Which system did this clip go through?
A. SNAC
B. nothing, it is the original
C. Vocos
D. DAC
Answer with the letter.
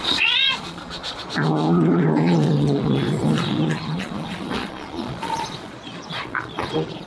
C